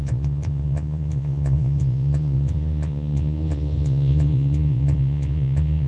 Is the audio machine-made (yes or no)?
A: yes